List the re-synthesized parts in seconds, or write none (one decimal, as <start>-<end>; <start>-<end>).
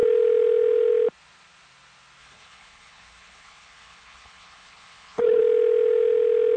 2.2-5.4